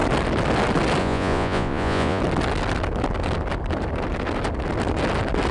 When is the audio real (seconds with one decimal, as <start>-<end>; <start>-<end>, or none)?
0.0-1.0; 2.2-5.5